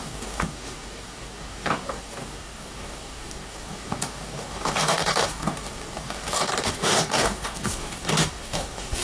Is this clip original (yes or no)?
no